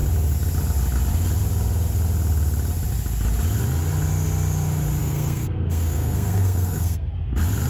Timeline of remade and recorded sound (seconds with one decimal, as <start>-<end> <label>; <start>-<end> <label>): 0.0-5.0 recorded; 5.0-7.1 remade; 7.1-7.7 recorded